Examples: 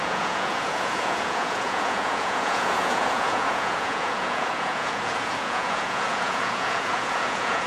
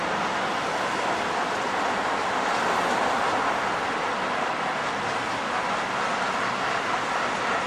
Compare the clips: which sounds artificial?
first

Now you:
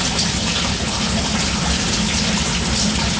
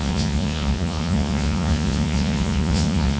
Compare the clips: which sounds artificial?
second